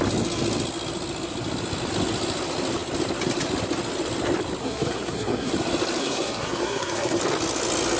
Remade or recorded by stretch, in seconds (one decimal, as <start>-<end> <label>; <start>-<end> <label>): 0.0-4.6 recorded; 4.6-5.5 remade; 5.5-6.0 recorded; 6.0-7.2 remade; 7.2-8.0 recorded